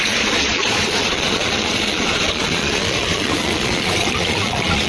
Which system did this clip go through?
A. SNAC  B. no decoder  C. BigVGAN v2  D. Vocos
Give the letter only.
D